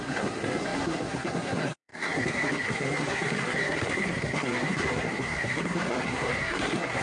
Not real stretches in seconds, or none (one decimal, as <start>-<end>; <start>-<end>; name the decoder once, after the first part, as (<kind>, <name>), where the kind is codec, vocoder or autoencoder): 0.0-7.0 (codec, SNAC)